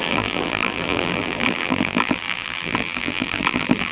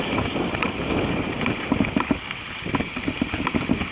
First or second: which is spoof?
first